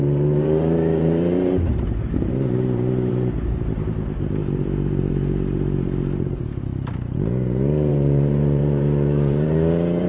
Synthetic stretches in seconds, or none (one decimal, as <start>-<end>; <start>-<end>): 0.0-6.4; 7.9-10.1